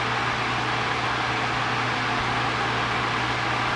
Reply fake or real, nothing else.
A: real